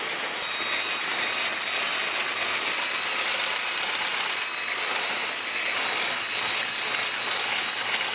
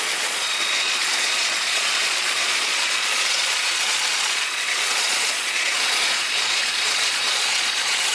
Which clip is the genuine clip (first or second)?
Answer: first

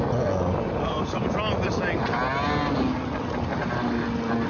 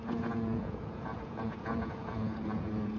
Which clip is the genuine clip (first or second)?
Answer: first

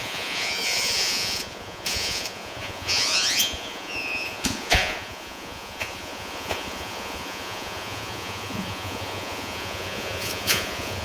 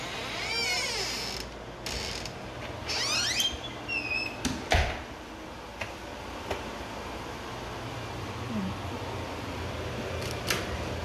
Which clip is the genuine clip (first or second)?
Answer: second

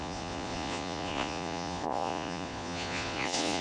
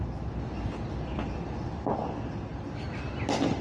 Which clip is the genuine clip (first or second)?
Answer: second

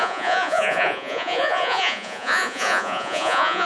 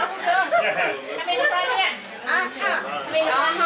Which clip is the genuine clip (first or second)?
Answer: second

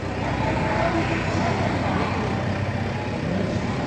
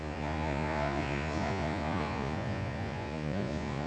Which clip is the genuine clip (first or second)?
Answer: first